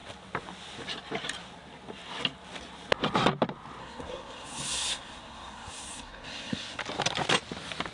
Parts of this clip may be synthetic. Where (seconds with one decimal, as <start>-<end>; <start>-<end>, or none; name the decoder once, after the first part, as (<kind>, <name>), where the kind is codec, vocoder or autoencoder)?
3.8-6.8 (codec, SNAC)